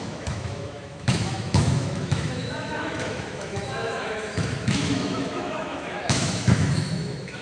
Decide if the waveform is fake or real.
fake